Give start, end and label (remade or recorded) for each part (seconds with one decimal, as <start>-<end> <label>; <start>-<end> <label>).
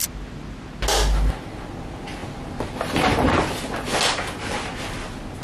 0.0-5.4 recorded